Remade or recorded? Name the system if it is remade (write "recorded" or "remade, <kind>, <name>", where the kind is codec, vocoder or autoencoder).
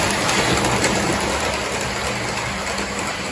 recorded